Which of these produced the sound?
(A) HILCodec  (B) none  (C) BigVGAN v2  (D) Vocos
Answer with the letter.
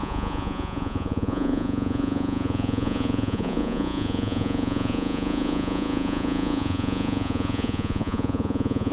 D